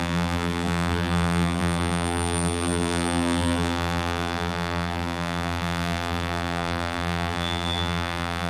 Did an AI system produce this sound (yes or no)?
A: yes